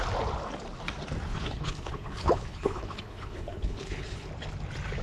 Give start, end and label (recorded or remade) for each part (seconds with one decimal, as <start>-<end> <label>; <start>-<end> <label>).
0.0-1.3 recorded; 1.3-4.3 remade; 4.3-5.0 recorded